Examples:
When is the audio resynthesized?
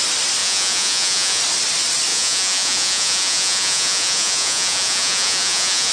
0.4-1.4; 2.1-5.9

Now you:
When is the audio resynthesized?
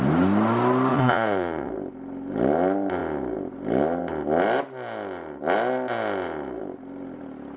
0.9-1.7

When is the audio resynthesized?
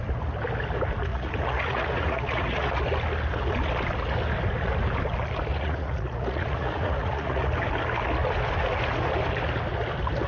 1.1-2.8; 5.5-7.5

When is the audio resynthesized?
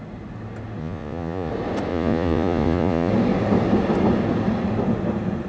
0.8-1.5; 1.9-3.1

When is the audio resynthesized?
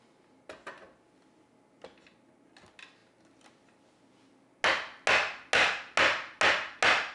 none